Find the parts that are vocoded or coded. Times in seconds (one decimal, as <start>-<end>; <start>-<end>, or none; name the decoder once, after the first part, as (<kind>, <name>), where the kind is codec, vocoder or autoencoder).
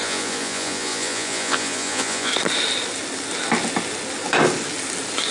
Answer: 0.0-2.3 (vocoder, Vocos)